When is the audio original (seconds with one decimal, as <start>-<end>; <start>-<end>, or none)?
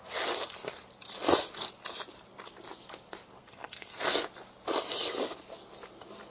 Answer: 0.0-3.4; 4.0-6.3